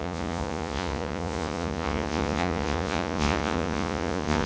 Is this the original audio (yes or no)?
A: no